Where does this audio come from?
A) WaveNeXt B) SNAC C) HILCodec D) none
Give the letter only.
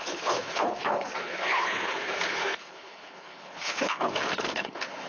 C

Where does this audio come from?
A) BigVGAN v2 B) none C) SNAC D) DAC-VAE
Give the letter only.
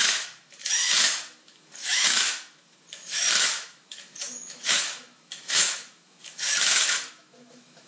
D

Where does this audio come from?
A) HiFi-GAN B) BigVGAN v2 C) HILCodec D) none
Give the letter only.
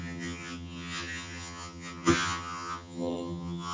A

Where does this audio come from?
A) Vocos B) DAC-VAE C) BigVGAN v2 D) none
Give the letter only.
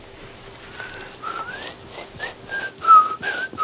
D